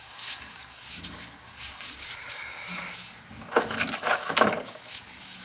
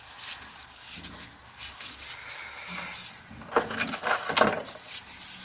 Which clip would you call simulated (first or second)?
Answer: first